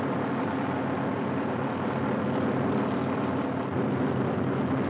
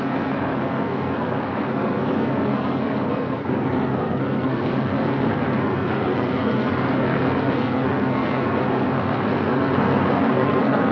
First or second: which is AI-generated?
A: second